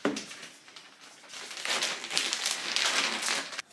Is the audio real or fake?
real